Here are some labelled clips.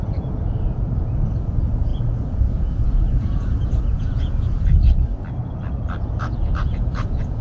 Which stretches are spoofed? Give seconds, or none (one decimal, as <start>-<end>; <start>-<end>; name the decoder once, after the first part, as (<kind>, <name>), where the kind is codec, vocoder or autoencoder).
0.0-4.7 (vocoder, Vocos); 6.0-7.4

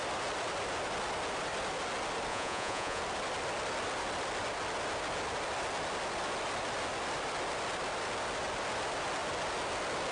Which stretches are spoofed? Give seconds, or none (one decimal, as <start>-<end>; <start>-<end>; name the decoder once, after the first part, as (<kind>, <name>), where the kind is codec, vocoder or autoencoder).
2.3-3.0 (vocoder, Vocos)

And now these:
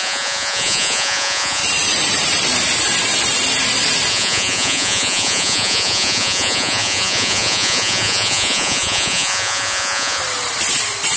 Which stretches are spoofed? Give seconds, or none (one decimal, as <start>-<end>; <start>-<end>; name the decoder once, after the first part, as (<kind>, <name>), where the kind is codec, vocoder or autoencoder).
0.0-1.6 (vocoder, Vocos); 4.1-10.2

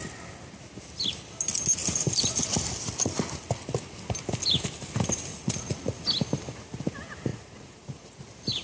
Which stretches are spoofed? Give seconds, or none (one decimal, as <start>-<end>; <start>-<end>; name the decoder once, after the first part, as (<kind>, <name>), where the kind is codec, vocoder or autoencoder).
5.3-6.0 (vocoder, Vocos); 7.3-8.2

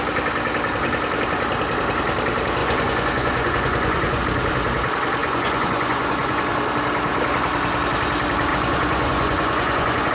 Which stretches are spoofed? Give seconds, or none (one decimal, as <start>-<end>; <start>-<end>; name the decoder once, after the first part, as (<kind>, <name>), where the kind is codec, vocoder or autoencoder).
2.6-4.2 (vocoder, Vocos); 5.2-6.4; 8.5-10.1

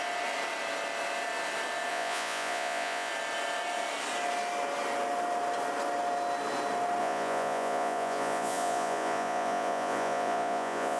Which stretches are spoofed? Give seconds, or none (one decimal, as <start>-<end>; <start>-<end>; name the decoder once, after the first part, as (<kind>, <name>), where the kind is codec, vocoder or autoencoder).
1.9-3.1 (vocoder, Vocos); 7.0-11.0

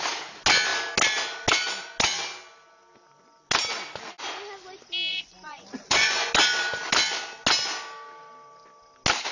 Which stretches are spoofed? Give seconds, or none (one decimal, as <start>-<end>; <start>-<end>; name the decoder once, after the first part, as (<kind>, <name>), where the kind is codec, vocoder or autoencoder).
5.1-6.3 (vocoder, Vocos)